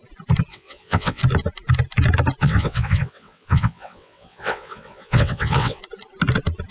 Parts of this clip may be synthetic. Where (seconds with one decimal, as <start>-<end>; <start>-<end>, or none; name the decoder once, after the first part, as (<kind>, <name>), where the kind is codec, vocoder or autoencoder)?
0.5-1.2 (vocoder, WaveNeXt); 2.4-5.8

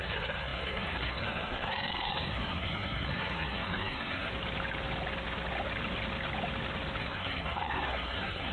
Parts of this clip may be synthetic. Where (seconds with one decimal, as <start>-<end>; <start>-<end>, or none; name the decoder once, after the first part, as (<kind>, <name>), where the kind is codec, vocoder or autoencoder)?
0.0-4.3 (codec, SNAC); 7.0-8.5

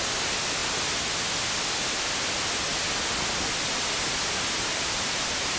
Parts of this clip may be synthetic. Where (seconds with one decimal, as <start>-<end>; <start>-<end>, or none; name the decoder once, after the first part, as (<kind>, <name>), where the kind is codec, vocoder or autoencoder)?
4.7-5.6 (vocoder, BigVGAN v2)

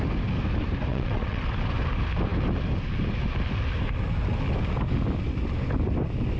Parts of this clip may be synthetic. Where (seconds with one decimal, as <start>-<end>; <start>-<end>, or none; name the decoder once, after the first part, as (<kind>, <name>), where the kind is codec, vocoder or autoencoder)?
0.9-1.4 (vocoder, WaveNeXt)

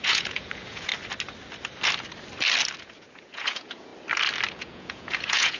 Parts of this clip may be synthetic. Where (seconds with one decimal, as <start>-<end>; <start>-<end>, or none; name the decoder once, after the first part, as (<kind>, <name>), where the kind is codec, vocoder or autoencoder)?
0.0-0.9 (vocoder, Vocos); 2.8-3.9; 4.5-5.6